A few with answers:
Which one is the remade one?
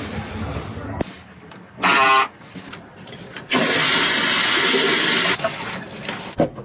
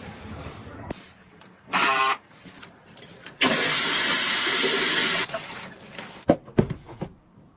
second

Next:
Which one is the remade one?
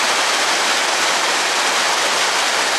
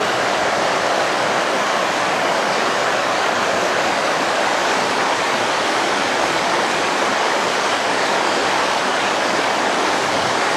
second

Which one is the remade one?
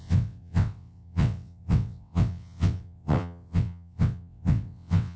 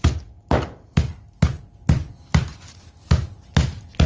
first